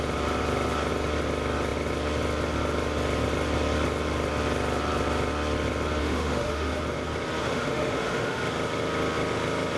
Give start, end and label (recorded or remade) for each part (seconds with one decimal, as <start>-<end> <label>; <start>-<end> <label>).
0.0-6.0 recorded; 6.0-6.8 remade; 6.8-7.4 recorded; 7.4-8.4 remade; 8.4-9.8 recorded